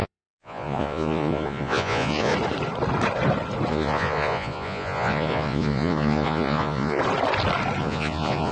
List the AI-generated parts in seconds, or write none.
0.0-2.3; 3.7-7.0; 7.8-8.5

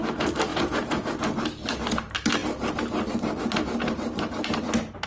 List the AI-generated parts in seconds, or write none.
0.5-1.2

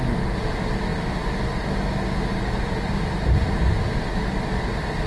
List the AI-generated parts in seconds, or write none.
none

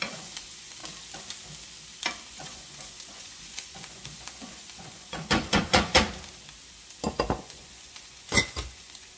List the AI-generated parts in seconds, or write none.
0.0-0.8; 2.3-5.9; 7.4-9.2

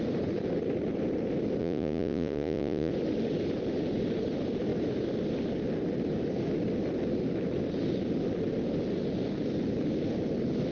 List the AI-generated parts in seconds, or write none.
1.6-2.9

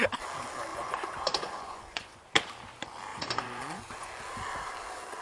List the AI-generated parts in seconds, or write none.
0.7-2.2; 3.1-4.1

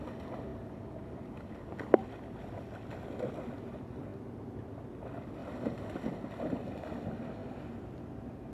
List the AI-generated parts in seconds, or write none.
none

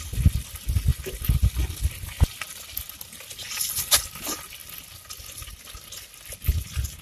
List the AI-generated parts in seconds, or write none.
none